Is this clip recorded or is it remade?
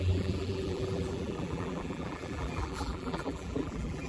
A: remade